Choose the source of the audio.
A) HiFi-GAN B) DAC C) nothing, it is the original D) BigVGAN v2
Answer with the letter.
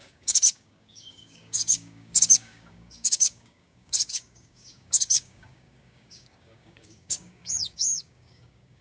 B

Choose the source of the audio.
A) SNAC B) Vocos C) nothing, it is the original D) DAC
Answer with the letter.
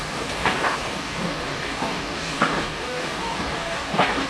D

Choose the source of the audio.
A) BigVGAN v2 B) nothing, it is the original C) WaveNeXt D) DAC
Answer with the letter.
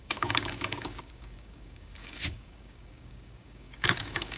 D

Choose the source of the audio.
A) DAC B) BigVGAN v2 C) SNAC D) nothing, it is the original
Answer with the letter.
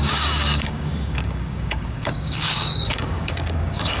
A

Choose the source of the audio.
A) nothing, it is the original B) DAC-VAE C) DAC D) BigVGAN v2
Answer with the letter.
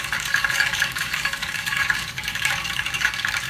C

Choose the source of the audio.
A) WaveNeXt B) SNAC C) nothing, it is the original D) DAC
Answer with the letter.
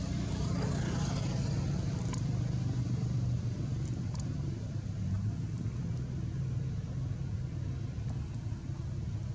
C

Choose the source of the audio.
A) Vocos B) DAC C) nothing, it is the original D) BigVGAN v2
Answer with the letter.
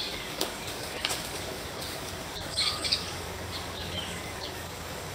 B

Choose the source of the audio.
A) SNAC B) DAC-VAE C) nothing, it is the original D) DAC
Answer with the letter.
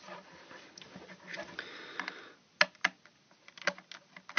C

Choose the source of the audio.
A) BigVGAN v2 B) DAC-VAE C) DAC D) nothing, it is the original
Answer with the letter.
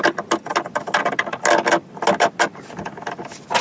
D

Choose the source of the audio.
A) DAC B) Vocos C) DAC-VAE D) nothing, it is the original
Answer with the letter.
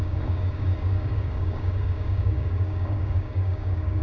A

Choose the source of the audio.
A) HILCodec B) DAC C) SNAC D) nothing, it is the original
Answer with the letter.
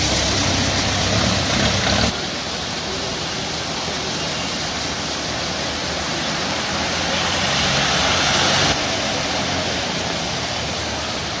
D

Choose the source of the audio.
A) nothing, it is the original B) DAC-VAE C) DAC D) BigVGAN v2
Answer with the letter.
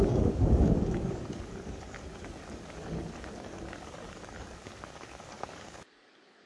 C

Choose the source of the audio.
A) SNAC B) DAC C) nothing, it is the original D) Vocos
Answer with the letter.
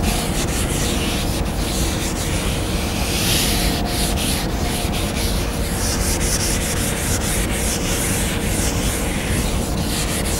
C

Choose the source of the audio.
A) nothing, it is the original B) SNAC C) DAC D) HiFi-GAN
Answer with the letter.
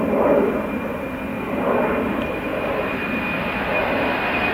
A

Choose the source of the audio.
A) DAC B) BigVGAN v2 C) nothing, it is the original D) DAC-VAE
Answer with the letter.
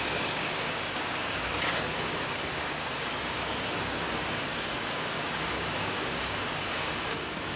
A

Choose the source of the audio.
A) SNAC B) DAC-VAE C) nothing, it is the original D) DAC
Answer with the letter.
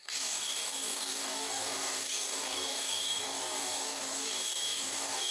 D